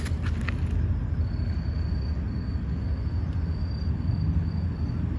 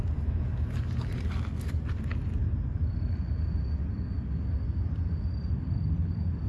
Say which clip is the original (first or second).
first